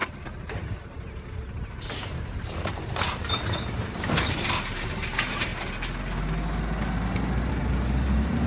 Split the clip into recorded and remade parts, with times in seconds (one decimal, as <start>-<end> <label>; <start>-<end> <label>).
0.0-5.5 remade; 5.5-7.5 recorded; 7.5-8.5 remade